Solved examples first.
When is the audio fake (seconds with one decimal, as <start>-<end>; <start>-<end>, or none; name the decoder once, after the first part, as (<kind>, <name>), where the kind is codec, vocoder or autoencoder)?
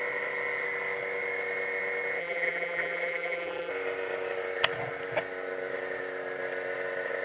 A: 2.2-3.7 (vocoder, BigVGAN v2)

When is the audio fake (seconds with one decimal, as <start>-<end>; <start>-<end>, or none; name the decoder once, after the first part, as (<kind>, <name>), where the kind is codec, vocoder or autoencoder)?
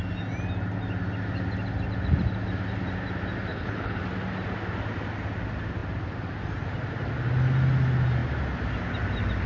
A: 3.5-4.0 (codec, HILCodec)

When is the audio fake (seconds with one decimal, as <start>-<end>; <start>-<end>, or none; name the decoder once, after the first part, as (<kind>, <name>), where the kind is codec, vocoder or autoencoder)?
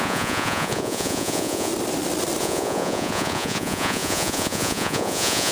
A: 0.0-1.7 (vocoder, Vocos); 2.4-5.5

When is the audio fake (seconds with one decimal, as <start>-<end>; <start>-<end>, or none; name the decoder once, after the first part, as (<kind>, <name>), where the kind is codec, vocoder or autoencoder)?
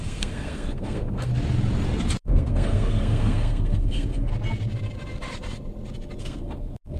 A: 0.0-1.3 (codec, SNAC); 2.2-4.3; 6.2-7.0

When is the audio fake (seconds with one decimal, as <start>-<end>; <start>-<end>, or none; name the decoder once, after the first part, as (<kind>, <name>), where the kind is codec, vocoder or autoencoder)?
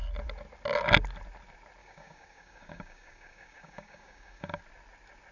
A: 1.8-4.6 (codec, DAC)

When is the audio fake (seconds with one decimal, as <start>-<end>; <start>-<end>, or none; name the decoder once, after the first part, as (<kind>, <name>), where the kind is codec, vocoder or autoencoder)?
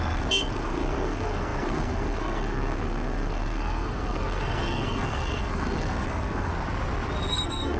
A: 0.0-6.5 (codec, SNAC); 7.3-7.8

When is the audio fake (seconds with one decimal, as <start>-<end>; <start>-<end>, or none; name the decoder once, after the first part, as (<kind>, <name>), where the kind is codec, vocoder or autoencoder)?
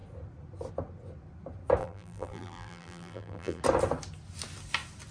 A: 1.8-3.6 (vocoder, BigVGAN v2)